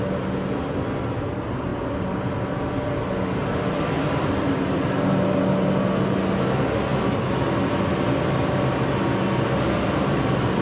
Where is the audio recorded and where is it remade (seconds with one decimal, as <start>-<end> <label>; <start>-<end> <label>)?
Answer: 0.0-10.6 recorded